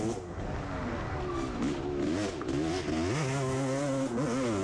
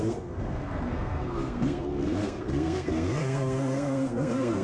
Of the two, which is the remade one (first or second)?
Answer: second